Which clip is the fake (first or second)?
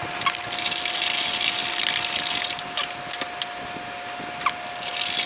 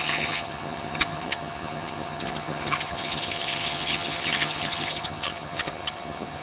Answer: second